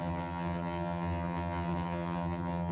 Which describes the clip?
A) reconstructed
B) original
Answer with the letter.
A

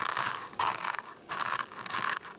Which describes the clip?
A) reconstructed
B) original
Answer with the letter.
A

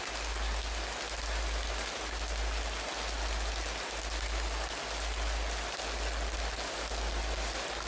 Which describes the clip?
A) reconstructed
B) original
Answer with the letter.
B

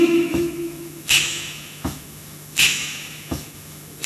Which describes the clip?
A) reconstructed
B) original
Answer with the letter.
A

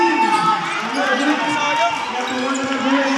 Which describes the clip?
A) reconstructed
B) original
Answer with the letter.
B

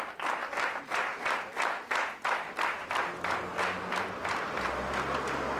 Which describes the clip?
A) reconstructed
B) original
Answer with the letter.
B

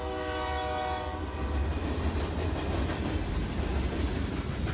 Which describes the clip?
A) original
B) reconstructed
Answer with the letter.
A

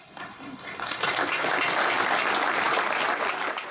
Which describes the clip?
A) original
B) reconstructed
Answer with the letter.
A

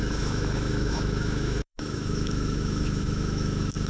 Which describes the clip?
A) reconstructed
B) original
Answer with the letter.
A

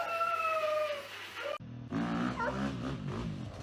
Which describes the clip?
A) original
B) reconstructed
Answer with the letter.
A